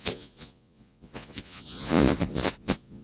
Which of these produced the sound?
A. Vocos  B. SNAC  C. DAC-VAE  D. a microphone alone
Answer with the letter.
A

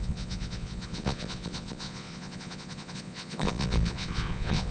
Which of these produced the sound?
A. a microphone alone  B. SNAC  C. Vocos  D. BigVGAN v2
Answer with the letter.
C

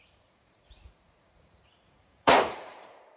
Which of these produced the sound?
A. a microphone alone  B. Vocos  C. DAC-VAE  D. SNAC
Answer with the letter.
B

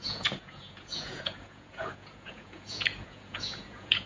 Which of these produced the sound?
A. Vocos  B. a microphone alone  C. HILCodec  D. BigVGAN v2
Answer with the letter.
A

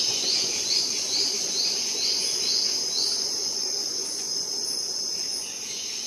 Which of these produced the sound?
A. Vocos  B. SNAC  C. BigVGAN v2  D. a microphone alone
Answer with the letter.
A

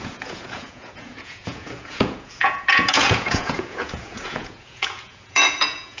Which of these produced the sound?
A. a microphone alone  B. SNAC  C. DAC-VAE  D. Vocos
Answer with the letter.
D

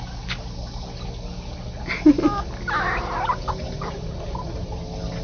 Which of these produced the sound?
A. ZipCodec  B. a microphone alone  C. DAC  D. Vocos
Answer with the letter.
B